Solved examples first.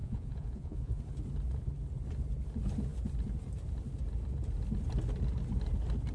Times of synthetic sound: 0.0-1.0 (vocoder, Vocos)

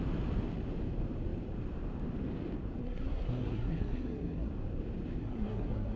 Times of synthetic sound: 2.8-4.5 (codec, SNAC); 5.2-6.0

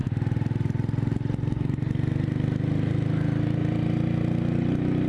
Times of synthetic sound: none

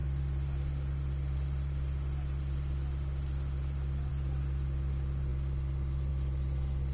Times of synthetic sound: none

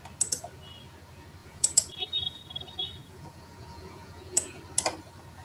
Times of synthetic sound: 1.4-2.4 (vocoder, Vocos); 3.0-4.6

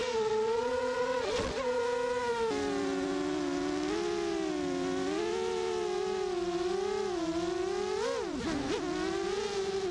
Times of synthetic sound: 0.0-1.8 (vocoder, Vocos)

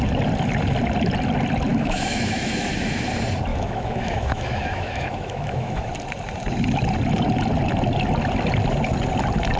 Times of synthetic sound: 1.7-3.1 (autoencoder, DAC-VAE); 3.5-5.9

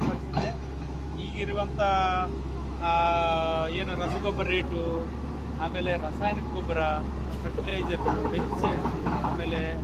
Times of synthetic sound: 0.0-9.8 (autoencoder, DAC-VAE)